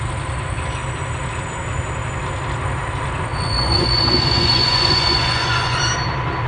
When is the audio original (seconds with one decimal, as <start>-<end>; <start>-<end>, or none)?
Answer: 0.0-3.3; 5.8-6.5